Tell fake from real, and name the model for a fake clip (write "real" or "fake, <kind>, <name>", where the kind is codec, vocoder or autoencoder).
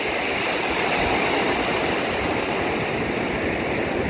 real